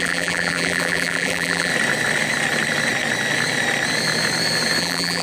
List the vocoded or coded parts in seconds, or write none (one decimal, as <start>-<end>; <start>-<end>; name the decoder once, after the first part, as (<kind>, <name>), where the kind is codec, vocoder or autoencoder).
0.0-1.7 (vocoder, BigVGAN v2); 4.8-5.2

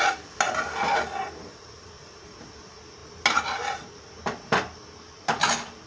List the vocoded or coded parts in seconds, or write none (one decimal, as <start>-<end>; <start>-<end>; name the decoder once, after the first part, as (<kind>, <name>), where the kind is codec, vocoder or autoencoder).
none

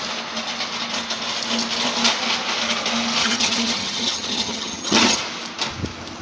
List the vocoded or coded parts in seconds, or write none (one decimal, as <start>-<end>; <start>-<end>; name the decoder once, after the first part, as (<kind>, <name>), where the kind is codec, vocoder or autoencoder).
3.2-5.2 (vocoder, HiFi-GAN)

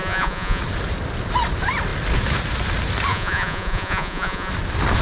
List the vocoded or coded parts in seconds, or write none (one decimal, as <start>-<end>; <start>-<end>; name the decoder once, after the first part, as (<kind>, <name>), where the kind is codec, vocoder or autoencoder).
0.0-0.6 (vocoder, Vocos); 3.1-4.5